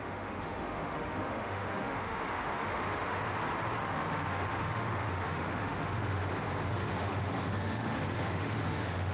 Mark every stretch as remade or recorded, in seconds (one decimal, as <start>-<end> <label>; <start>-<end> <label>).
0.0-3.2 remade; 3.2-3.8 recorded; 3.8-6.2 remade; 6.2-6.7 recorded; 6.7-9.1 remade

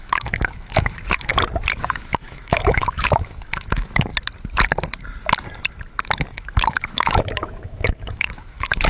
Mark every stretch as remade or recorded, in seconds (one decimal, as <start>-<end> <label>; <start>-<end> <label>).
0.0-1.3 remade; 1.3-1.8 recorded; 1.8-4.1 remade; 4.1-6.3 recorded; 6.3-8.9 remade